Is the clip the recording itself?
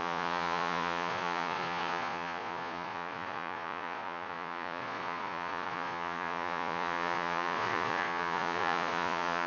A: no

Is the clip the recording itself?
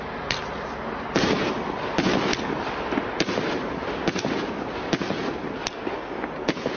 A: yes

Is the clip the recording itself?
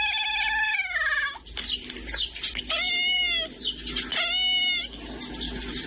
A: yes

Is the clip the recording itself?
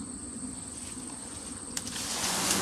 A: no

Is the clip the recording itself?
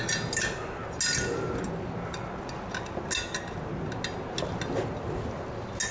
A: yes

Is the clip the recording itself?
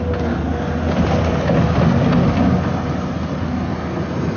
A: yes